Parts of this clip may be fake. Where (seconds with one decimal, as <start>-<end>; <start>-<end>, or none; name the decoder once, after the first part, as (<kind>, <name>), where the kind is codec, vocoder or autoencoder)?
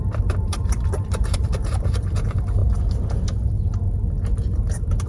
0.0-2.6 (vocoder, BigVGAN v2)